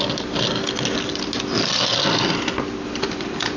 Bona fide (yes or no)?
yes